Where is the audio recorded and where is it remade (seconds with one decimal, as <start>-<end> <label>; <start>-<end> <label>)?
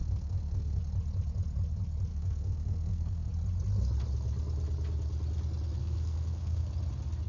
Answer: 0.0-0.8 remade; 0.8-2.1 recorded; 2.1-3.3 remade; 3.3-5.8 recorded; 5.8-6.7 remade; 6.7-7.3 recorded